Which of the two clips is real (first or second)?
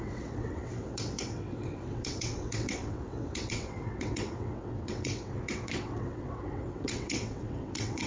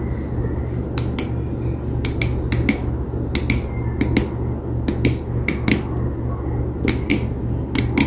second